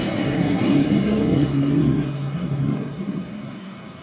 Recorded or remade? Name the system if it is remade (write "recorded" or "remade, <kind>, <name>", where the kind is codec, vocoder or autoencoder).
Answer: remade, codec, SNAC